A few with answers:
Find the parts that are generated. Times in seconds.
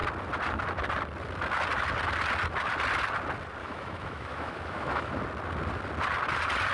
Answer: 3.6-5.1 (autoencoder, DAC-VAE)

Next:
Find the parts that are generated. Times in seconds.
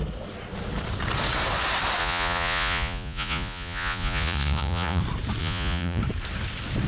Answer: 2.0-5.0 (vocoder, Vocos); 5.4-6.0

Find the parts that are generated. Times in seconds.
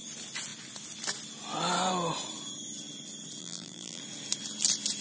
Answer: 3.4-4.0 (vocoder, BigVGAN v2)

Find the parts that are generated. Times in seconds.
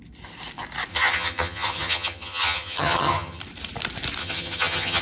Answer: 0.9-3.4 (vocoder, HiFi-GAN); 4.2-5.0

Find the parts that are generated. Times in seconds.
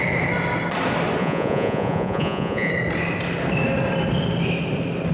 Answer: 1.2-2.7 (vocoder, Vocos)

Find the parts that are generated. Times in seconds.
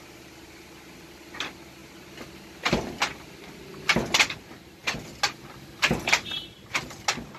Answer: none